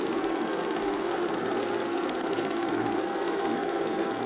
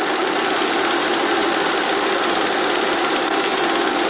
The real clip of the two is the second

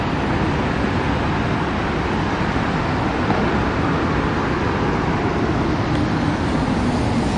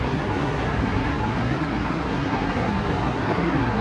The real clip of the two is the first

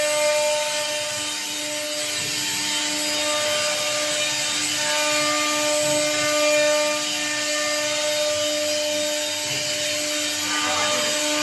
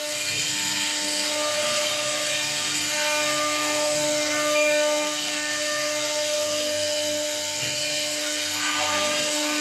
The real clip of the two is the first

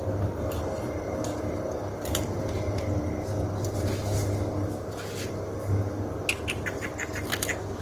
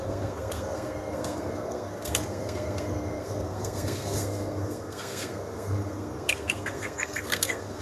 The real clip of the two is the first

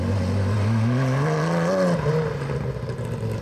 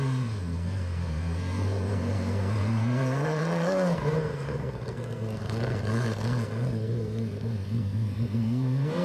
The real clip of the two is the first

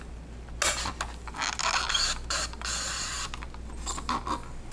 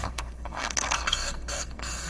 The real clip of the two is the first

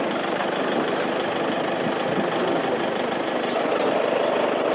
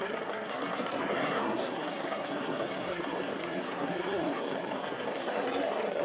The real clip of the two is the first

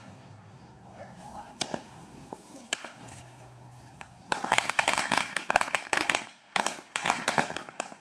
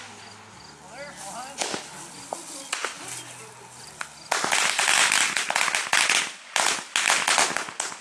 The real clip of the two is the second